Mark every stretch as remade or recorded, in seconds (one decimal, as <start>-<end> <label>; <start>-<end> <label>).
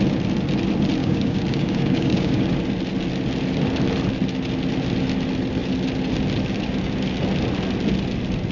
0.0-1.0 recorded; 1.0-2.5 remade; 2.5-8.5 recorded